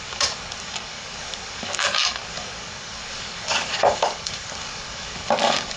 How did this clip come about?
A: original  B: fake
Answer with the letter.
B